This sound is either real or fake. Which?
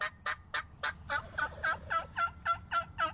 real